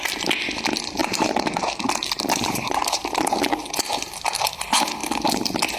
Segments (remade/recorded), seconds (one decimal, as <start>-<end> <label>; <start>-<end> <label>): 0.0-1.0 recorded; 1.0-4.5 remade; 4.5-5.8 recorded